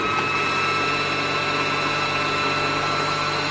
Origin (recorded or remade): recorded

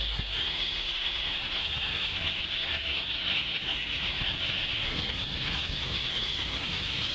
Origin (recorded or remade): remade